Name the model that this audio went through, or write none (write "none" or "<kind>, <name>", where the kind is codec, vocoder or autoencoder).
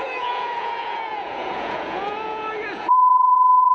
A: vocoder, Vocos